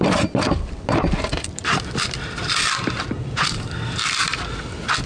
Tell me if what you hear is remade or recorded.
remade